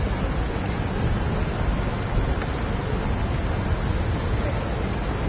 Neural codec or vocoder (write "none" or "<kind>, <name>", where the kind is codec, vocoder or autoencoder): none